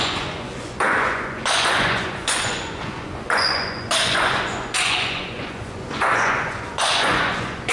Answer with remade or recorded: remade